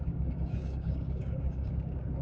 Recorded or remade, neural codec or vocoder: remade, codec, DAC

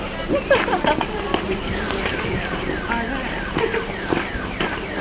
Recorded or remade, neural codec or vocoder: recorded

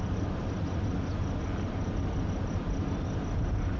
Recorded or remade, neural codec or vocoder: recorded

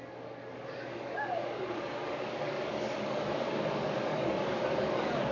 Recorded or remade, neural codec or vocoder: remade, codec, DAC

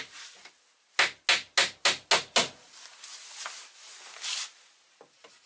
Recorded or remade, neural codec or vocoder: recorded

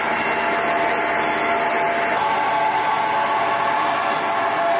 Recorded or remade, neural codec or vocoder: recorded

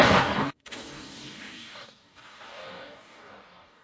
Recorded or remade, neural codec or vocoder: remade, codec, DAC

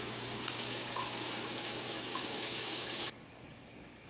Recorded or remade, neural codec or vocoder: remade, codec, DAC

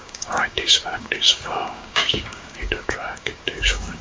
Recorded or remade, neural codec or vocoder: remade, codec, DAC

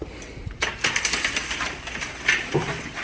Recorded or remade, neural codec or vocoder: recorded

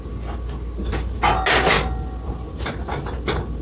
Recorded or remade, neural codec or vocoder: recorded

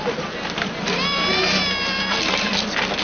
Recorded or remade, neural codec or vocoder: recorded